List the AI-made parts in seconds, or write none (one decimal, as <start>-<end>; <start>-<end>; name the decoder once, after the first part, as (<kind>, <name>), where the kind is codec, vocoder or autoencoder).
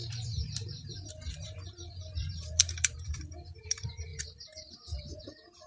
0.0-4.1 (vocoder, BigVGAN v2)